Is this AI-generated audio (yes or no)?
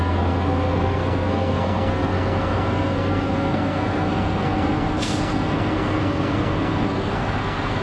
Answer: yes